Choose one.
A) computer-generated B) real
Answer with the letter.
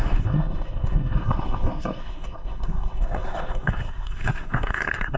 A